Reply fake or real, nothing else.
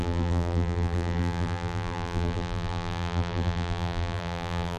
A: fake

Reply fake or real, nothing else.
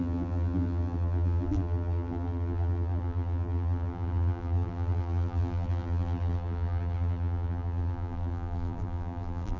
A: fake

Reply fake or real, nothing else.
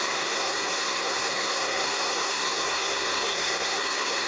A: fake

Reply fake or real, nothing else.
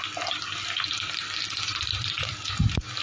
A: real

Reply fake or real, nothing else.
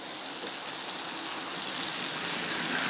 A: real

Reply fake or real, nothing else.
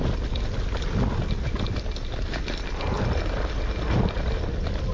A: real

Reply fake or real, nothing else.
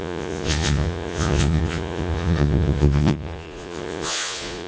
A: fake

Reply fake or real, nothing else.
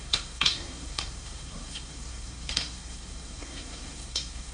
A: fake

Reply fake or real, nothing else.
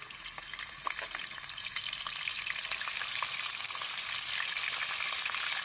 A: real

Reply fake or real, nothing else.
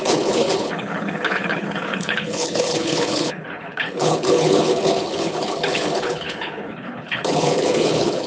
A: fake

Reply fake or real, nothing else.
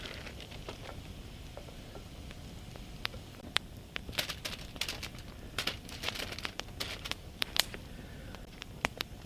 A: fake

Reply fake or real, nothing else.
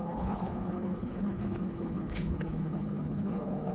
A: fake